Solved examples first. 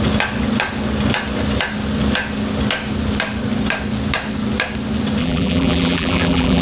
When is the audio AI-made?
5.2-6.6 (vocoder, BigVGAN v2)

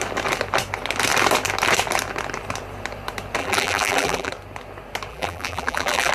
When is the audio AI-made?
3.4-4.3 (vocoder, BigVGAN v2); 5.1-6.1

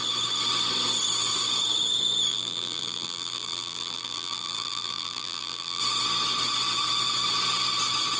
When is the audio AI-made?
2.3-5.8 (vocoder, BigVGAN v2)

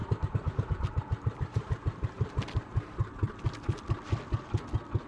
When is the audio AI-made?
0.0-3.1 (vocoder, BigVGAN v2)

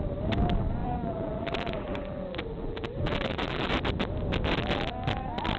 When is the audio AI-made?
0.8-3.7 (vocoder, BigVGAN v2)